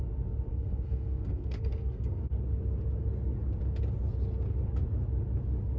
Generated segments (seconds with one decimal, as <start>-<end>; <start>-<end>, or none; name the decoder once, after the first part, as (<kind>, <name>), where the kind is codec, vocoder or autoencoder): 0.5-2.2 (codec, SNAC)